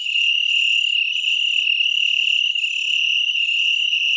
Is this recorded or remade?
recorded